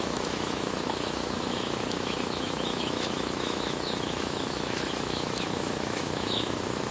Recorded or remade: remade